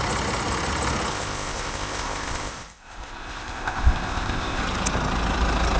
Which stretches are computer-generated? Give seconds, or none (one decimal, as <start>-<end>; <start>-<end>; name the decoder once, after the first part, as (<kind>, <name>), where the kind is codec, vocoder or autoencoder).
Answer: 1.1-4.6 (codec, ZipCodec)